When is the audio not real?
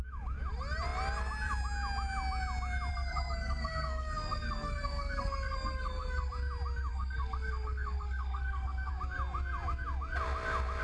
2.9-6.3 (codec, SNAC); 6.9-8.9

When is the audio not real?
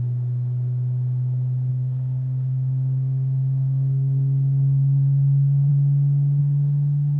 1.7-5.7 (codec, SNAC); 6.4-7.2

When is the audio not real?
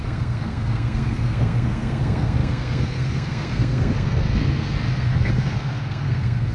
0.0-6.5 (codec, SNAC)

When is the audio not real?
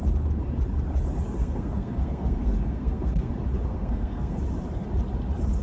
1.4-3.3 (codec, SNAC); 3.7-4.4